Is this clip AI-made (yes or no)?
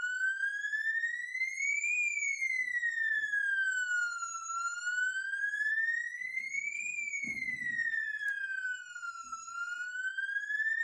no